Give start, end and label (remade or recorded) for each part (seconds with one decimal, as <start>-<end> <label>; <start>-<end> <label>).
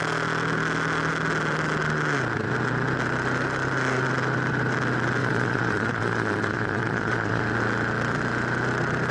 0.0-5.2 recorded; 5.2-7.4 remade; 7.4-9.1 recorded